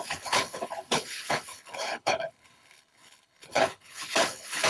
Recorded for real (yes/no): no